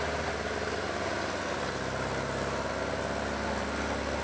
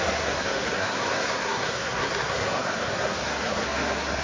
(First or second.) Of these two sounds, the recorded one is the first